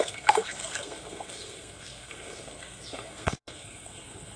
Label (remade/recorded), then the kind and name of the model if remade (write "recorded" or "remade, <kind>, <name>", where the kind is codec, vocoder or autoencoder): remade, codec, SNAC